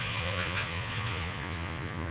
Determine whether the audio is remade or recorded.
remade